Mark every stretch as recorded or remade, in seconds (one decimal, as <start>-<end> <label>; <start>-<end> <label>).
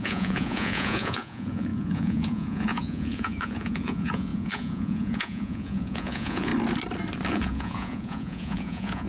0.0-6.5 remade; 6.5-7.3 recorded; 7.3-9.1 remade